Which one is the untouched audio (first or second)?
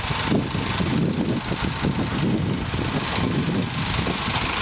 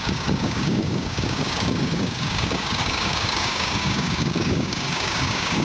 first